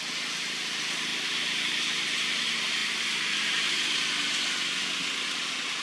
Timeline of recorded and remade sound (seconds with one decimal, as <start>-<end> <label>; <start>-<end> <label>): 0.0-5.8 recorded